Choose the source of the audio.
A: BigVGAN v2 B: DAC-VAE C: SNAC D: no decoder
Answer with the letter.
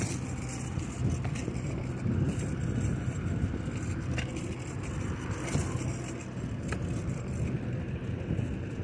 D